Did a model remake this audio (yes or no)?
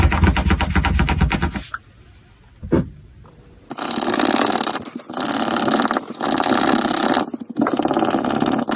no